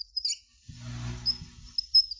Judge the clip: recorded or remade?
recorded